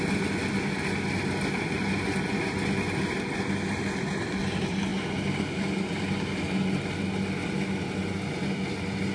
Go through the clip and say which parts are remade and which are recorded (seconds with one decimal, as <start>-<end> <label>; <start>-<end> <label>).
0.0-9.1 recorded